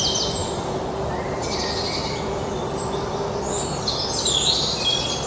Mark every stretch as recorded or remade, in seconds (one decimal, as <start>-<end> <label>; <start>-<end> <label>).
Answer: 0.0-5.3 recorded